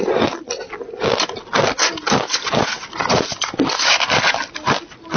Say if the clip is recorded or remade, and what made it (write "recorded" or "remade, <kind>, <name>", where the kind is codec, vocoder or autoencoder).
recorded